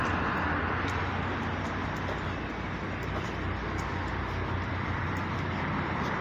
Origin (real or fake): real